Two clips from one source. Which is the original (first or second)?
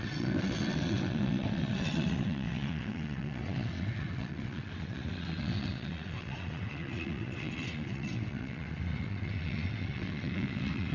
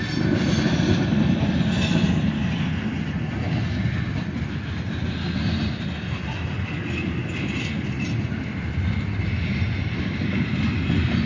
second